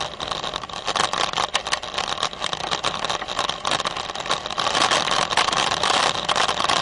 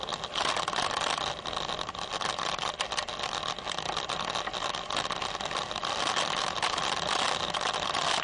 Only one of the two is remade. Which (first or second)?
first